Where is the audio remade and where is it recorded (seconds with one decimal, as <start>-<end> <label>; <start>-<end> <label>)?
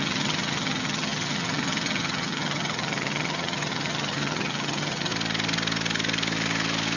0.0-5.1 remade; 5.1-7.0 recorded